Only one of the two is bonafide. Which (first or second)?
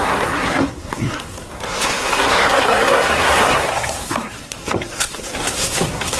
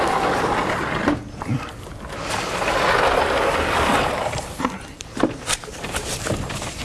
second